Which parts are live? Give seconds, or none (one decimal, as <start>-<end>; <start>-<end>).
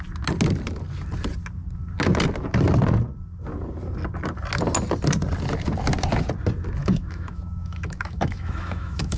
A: 0.0-6.8